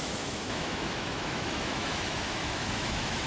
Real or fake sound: fake